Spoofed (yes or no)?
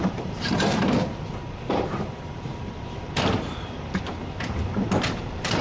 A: yes